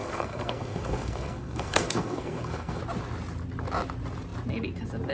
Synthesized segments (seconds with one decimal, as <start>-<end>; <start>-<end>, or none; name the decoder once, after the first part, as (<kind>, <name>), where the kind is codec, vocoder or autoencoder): 0.0-2.8 (codec, SNAC)